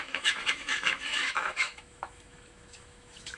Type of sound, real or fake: fake